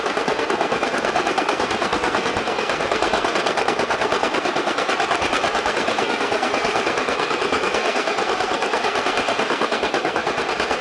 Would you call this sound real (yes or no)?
no